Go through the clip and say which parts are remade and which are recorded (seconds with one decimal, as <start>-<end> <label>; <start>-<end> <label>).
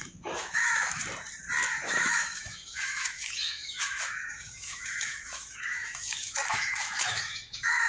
0.0-1.0 remade; 1.0-1.8 recorded; 1.8-7.9 remade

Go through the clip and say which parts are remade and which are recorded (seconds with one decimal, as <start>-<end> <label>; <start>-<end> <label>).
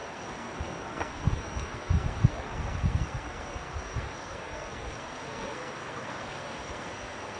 0.0-7.4 remade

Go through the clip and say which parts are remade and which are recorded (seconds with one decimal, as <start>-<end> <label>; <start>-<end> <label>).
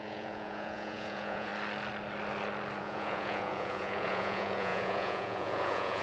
0.0-1.5 remade; 1.5-2.8 recorded; 2.8-6.0 remade